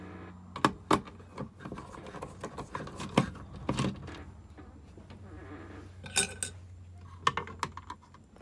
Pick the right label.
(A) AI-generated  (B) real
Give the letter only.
B